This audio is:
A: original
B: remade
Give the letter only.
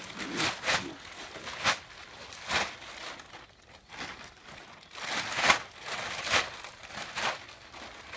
A